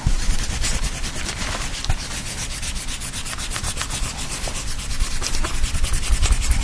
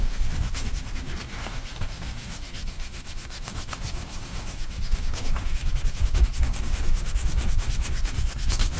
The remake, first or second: second